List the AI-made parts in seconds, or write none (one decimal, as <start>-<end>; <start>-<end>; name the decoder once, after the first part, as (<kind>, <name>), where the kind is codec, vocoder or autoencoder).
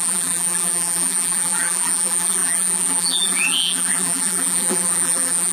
0.0-5.5 (vocoder, BigVGAN v2)